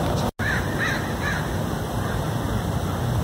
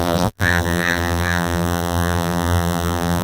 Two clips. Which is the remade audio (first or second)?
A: second